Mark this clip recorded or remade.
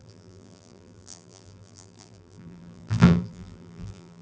remade